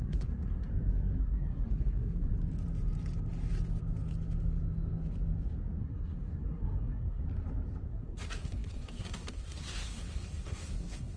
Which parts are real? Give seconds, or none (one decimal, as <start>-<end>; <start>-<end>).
0.7-1.2; 2.3-5.8; 7.2-7.9